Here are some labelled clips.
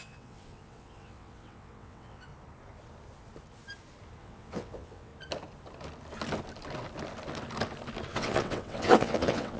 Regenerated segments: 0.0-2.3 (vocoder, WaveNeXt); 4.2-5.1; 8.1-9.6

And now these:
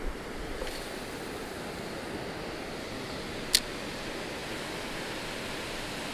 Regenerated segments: none

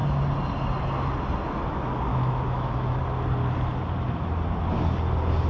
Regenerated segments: 2.1-3.0 (autoencoder, DAC-VAE)

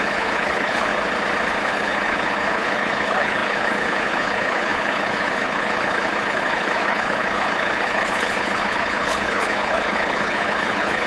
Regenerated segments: 0.0-0.9 (codec, HILCodec); 1.7-11.1